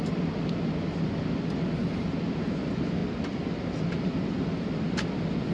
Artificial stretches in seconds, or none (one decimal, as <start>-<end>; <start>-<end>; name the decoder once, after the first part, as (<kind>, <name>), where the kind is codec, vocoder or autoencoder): none